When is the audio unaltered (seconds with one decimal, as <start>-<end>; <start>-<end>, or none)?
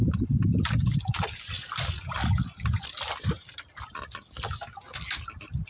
0.7-5.7